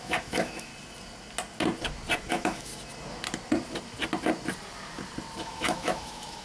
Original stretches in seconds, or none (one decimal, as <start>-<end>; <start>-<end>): 0.7-2.3; 2.7-5.4